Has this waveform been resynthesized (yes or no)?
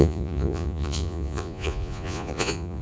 yes